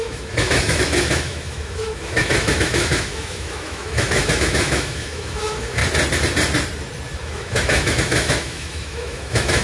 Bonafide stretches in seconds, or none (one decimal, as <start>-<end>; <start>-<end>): 5.8-7.2